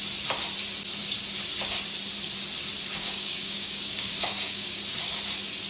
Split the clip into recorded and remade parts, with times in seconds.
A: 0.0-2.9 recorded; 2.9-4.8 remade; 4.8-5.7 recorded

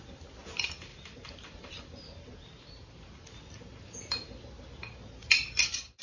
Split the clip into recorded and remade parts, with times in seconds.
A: 0.0-6.0 recorded

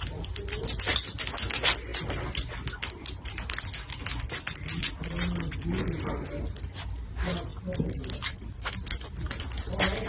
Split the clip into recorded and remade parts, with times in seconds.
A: 0.0-10.1 recorded

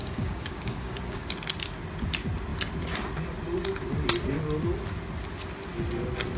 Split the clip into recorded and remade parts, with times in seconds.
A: 0.0-1.3 remade; 1.3-6.4 recorded

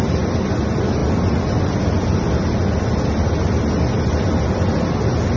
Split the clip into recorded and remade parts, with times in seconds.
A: 0.0-5.4 recorded

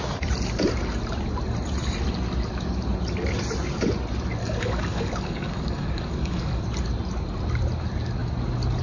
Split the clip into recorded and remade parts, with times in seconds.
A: 0.0-4.4 recorded; 4.4-6.6 remade; 6.6-8.8 recorded

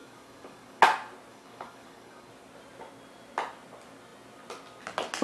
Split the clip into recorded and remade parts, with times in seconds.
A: 0.0-0.8 remade; 0.8-1.3 recorded; 1.3-2.3 remade; 2.3-5.2 recorded